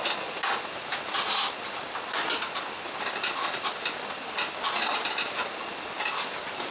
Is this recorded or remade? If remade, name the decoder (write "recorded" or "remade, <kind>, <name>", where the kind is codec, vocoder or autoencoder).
recorded